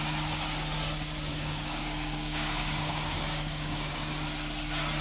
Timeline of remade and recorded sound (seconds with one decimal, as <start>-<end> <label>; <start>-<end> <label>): 0.0-1.3 recorded; 1.3-4.1 remade; 4.1-5.0 recorded